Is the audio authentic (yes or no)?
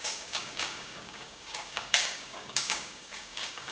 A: no